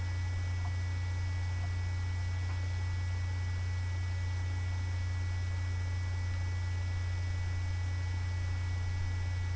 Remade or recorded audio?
recorded